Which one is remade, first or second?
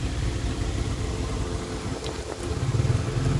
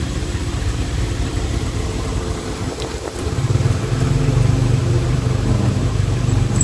second